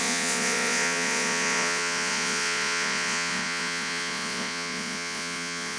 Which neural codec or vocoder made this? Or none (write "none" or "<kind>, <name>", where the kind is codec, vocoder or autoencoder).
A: vocoder, Vocos